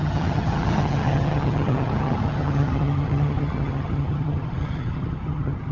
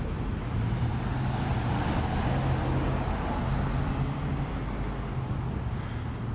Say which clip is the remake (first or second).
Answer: first